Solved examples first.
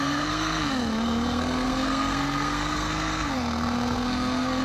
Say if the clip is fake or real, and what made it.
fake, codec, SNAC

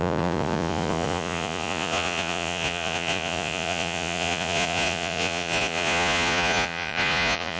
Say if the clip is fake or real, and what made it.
fake, vocoder, Vocos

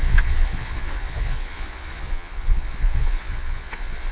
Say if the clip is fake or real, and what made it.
fake, vocoder, Vocos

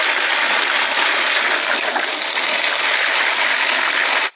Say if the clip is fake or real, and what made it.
real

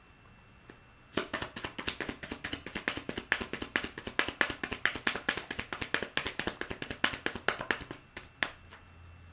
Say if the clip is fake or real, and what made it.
real